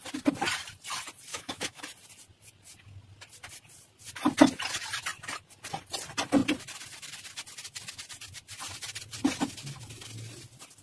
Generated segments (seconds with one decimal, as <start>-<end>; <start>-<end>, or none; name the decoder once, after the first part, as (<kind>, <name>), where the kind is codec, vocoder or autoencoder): 1.3-1.8 (autoencoder, DAC-VAE)